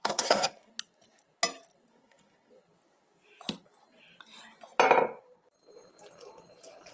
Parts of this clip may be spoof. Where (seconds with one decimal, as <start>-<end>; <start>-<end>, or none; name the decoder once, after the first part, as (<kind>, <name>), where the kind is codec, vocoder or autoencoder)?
0.0-0.7 (codec, SNAC); 1.9-2.5